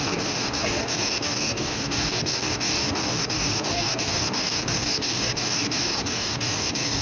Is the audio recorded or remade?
remade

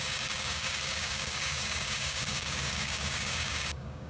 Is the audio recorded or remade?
remade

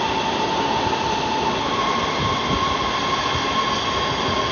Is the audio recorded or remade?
recorded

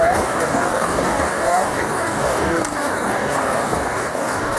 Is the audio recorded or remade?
remade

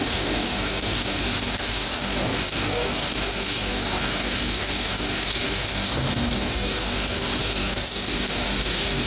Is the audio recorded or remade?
remade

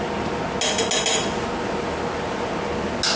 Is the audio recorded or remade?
recorded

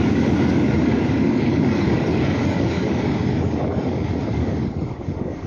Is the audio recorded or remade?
remade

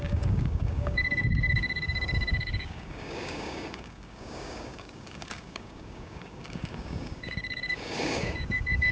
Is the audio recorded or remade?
remade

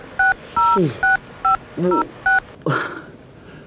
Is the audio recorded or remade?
recorded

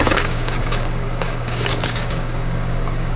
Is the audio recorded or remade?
remade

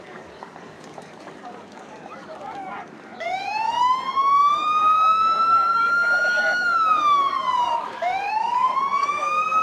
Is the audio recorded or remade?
remade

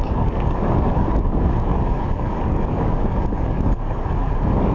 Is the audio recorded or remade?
remade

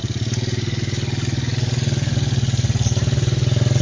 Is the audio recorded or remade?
recorded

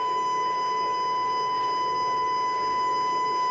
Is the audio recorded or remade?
remade